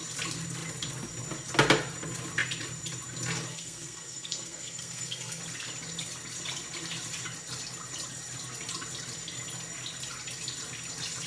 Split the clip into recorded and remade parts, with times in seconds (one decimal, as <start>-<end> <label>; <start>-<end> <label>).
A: 0.0-3.5 recorded; 3.5-5.4 remade; 5.4-11.3 recorded